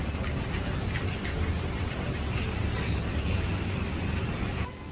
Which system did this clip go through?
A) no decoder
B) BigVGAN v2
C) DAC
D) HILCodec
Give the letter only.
A